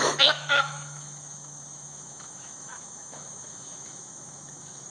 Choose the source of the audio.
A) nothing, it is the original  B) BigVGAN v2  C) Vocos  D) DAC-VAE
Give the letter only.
D